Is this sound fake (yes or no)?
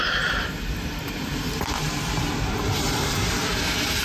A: yes